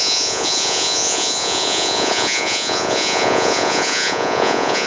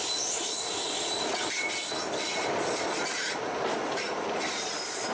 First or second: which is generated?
first